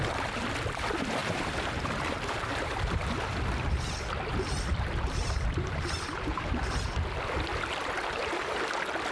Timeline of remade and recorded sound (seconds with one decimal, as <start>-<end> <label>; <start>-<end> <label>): 0.0-1.2 recorded; 1.2-3.0 remade; 3.0-4.3 recorded; 4.3-6.6 remade; 6.6-7.8 recorded; 7.8-8.3 remade; 8.3-9.1 recorded

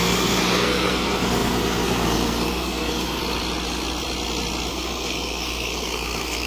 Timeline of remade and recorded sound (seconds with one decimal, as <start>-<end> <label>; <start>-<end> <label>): 0.0-3.2 remade; 3.2-4.7 recorded; 4.7-6.5 remade

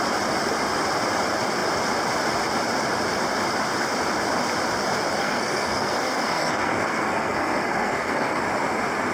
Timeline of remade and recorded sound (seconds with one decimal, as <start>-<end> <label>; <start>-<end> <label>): 0.0-5.2 recorded; 5.2-8.4 remade; 8.4-9.1 recorded

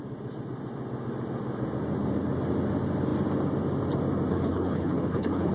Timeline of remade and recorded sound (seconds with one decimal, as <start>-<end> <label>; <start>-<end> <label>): 0.0-4.3 recorded; 4.3-5.5 remade

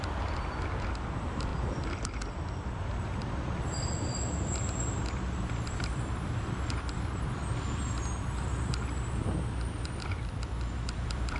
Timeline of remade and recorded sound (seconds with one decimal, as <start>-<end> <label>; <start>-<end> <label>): 0.0-1.5 remade; 1.5-2.3 recorded; 2.3-11.4 remade

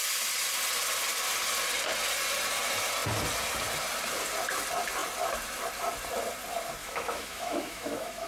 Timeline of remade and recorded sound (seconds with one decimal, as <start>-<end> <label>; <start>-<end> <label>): 0.0-6.8 recorded; 6.8-8.3 remade

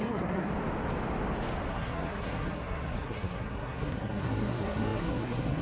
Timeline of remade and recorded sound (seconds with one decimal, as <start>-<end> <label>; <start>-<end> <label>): 0.0-0.5 remade; 0.5-1.7 recorded; 1.7-5.6 remade